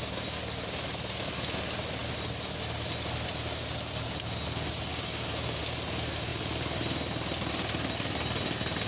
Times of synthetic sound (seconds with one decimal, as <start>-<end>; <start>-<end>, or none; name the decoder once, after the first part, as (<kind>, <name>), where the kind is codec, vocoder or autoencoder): 4.9-5.6 (codec, DAC)